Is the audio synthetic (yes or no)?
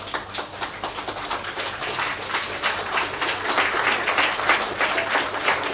no